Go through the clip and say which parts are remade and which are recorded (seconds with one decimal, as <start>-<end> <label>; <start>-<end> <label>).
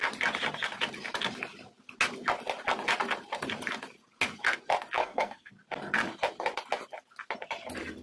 0.0-5.0 recorded; 5.0-5.5 remade; 5.5-8.0 recorded